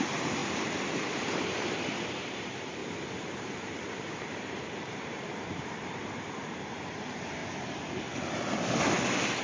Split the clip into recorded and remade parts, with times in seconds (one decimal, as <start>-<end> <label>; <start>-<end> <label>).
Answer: 0.0-0.4 remade; 0.4-1.1 recorded; 1.1-2.8 remade; 2.8-3.4 recorded; 3.4-7.4 remade; 7.4-9.4 recorded